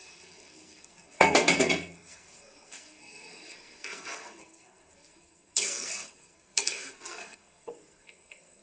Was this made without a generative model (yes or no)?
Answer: no